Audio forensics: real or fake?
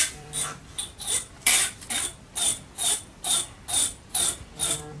fake